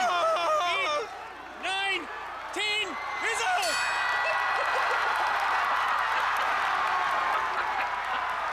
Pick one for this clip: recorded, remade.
recorded